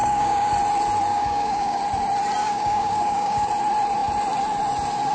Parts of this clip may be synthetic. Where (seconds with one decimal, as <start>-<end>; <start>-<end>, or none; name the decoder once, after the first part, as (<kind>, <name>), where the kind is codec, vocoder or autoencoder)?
0.0-0.5 (codec, DAC); 1.1-1.8; 2.4-3.5

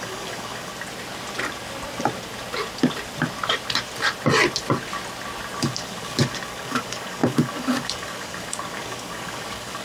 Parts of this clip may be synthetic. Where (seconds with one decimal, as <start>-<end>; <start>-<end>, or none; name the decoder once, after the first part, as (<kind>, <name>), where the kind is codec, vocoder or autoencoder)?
0.0-0.7 (codec, DAC); 5.6-9.8